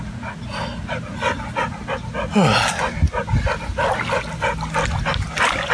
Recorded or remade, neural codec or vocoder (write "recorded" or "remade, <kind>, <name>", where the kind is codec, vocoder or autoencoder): recorded